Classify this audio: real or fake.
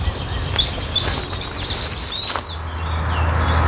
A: real